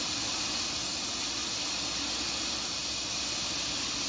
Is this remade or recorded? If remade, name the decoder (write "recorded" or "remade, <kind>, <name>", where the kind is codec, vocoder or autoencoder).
recorded